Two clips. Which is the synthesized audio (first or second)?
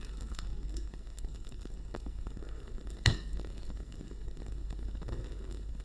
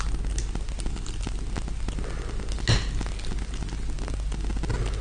first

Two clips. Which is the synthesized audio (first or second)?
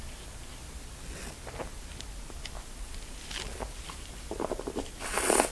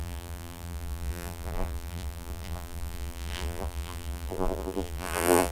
second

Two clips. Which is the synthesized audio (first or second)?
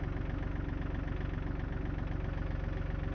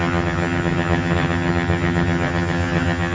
second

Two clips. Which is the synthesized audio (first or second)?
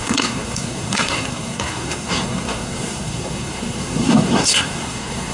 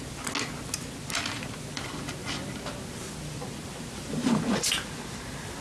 first